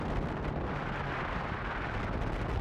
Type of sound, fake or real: real